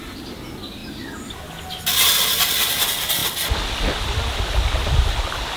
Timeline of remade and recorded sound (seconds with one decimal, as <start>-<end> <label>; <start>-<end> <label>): 0.0-5.6 recorded